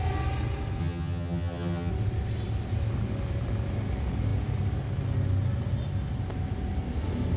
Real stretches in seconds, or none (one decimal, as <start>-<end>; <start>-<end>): 0.0-0.8; 1.9-7.4